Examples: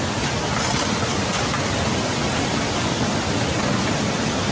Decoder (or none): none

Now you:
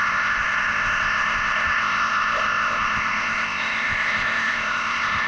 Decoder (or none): codec, ZipCodec